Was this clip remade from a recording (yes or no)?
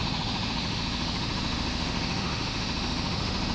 yes